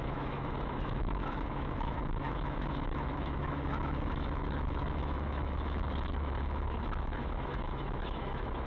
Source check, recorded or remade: remade